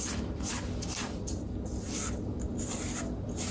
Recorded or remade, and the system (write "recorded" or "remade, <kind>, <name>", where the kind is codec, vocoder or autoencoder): recorded